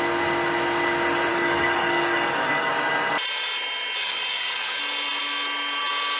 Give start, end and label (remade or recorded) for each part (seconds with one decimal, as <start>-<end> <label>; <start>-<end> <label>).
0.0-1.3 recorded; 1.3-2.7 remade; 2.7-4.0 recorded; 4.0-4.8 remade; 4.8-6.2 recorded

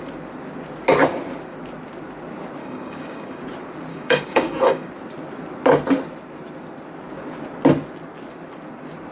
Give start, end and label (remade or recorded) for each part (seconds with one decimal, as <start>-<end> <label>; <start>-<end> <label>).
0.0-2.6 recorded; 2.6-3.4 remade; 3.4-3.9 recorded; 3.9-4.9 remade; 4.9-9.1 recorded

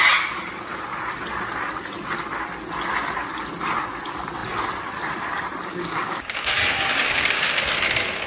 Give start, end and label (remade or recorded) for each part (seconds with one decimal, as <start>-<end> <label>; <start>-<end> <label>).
0.0-5.7 recorded; 5.7-7.4 remade; 7.4-8.3 recorded

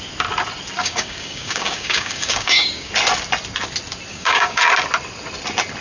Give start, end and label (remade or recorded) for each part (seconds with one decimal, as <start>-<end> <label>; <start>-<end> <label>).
0.0-0.8 recorded; 0.8-2.9 remade; 2.9-4.1 recorded; 4.1-4.6 remade; 4.6-5.8 recorded

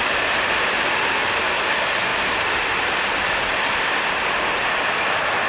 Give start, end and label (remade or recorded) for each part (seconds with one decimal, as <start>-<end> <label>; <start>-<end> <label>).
0.0-5.5 recorded

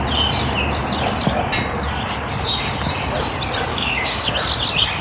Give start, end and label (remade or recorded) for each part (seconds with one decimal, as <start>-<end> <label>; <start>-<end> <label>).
0.0-3.7 recorded; 3.7-4.3 remade; 4.3-5.0 recorded

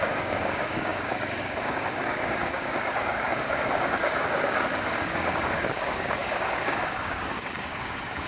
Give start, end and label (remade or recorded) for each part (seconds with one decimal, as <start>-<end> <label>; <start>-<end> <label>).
0.0-8.3 remade

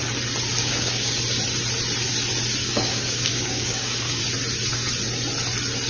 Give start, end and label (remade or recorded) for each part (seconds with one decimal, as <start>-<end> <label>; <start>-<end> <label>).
0.0-0.6 recorded; 0.6-1.2 remade; 1.2-2.6 recorded; 2.6-4.2 remade; 4.2-5.9 recorded